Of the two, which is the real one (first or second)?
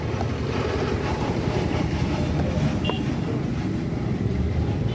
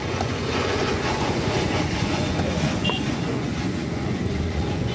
first